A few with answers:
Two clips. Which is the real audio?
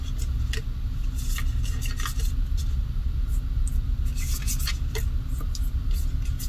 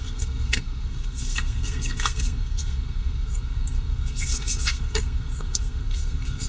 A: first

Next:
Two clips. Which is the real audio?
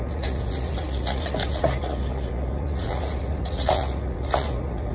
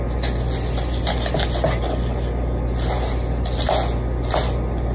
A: second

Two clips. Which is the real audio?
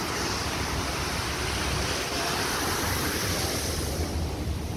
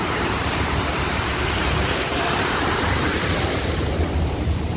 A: first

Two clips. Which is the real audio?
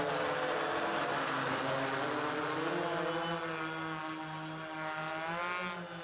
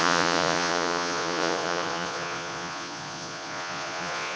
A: first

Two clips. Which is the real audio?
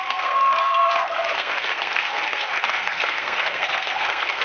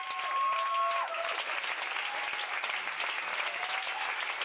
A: second